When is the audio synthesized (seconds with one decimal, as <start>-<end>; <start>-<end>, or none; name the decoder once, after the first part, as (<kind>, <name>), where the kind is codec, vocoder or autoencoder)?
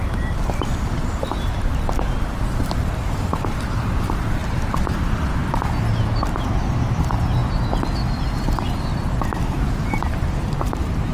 0.0-5.4 (vocoder, BigVGAN v2); 6.7-7.4; 9.6-11.1